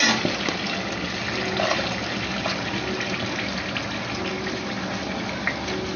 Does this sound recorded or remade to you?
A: recorded